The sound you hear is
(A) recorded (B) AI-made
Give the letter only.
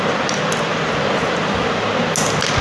A